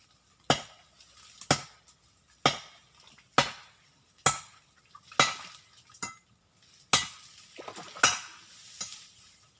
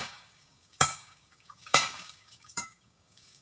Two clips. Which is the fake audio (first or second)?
second